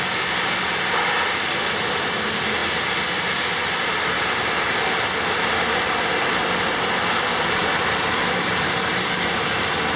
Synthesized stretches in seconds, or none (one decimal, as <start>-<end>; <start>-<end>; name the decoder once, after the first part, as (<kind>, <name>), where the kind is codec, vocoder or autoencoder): none